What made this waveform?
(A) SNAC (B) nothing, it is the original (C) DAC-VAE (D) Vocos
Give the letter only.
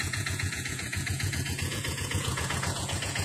D